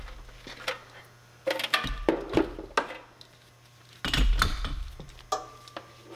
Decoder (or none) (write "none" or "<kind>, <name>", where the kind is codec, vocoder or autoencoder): none